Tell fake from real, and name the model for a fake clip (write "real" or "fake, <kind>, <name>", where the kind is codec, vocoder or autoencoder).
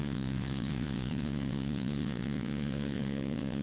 fake, vocoder, WaveNeXt